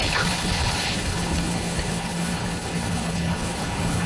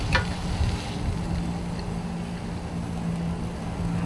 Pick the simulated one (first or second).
first